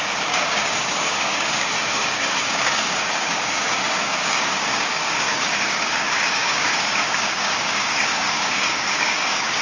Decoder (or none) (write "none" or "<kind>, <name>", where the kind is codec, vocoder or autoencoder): codec, DAC